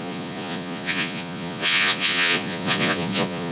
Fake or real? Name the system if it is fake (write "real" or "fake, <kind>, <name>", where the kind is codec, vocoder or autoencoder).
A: fake, vocoder, Vocos